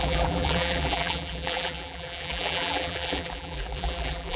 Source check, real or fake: fake